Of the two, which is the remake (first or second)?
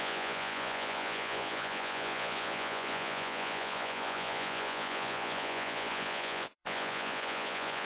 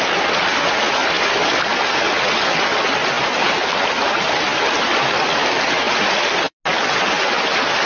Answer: first